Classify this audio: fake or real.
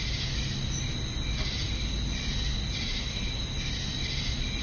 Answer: real